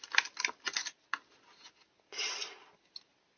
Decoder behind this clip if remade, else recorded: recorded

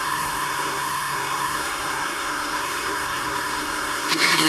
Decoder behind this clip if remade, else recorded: remade, codec, SNAC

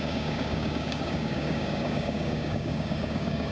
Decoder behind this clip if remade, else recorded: remade, codec, DAC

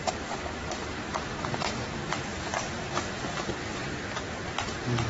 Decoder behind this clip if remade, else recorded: remade, vocoder, BigVGAN v2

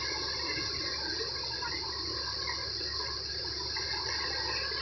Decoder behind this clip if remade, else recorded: recorded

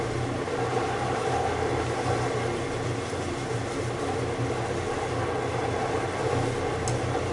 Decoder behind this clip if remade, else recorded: recorded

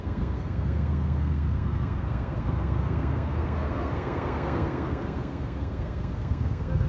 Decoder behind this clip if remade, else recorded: remade, codec, SNAC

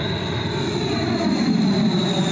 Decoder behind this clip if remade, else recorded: recorded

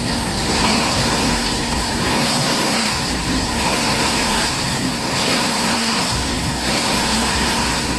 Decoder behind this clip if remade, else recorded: remade, codec, SNAC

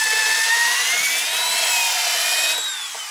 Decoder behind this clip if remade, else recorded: recorded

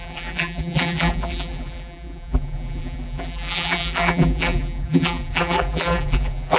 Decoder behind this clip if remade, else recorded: remade, vocoder, BigVGAN v2